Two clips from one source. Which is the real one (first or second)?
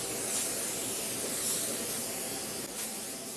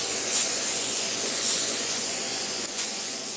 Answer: first